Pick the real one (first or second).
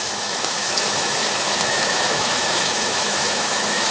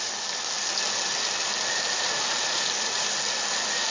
second